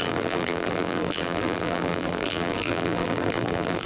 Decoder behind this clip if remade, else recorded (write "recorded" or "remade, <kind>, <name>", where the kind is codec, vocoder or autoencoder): remade, vocoder, BigVGAN v2